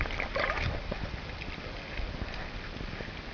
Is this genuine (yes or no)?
yes